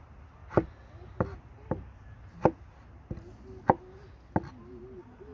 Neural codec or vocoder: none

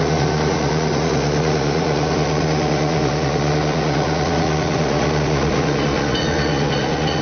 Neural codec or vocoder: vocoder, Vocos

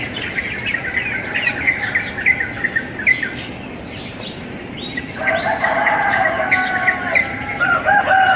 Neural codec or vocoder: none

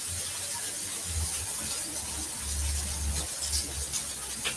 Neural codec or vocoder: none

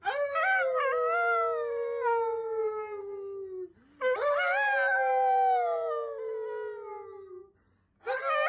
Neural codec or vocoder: none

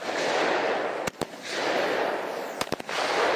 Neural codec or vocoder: none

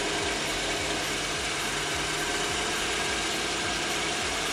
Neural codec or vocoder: none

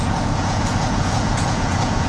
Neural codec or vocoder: vocoder, Vocos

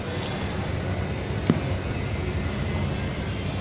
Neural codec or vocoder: none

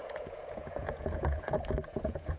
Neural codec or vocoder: vocoder, Vocos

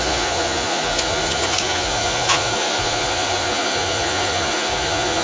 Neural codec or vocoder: vocoder, Vocos